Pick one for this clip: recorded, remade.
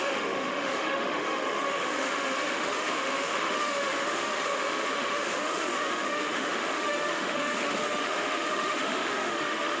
remade